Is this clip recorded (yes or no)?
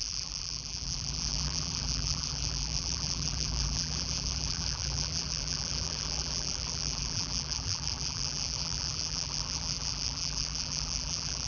no